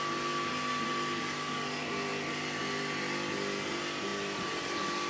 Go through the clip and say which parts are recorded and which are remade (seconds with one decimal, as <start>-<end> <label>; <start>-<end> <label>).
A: 0.0-4.1 recorded; 4.1-5.1 remade